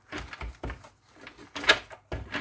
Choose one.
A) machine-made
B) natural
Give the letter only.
B